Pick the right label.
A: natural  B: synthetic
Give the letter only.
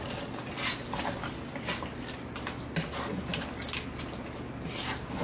A